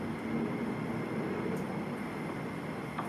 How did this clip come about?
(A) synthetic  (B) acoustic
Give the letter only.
B